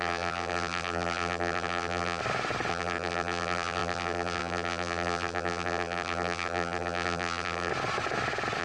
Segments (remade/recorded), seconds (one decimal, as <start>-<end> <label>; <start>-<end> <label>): 0.0-2.2 remade; 2.2-2.7 recorded; 2.7-7.7 remade; 7.7-8.6 recorded